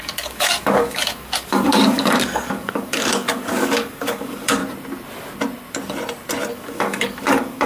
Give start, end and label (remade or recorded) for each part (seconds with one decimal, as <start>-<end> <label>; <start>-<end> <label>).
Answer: 0.0-4.6 remade; 4.6-6.5 recorded; 6.5-7.7 remade